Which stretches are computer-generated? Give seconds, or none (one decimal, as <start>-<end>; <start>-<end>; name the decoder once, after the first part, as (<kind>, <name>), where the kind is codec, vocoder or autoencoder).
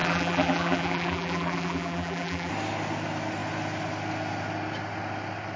0.0-2.5 (vocoder, BigVGAN v2)